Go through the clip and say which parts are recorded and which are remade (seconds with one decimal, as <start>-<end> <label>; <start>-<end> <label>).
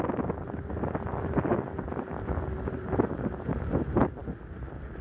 0.0-5.0 recorded